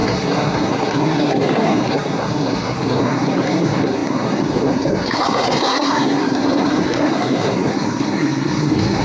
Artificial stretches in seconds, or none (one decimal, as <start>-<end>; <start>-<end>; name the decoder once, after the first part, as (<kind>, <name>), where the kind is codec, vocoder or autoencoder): 0.0-9.0 (codec, SNAC)